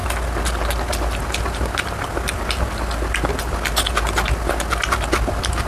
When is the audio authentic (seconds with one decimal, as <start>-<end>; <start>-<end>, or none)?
0.0-5.7